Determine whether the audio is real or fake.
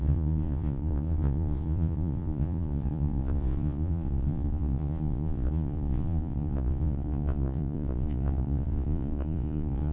fake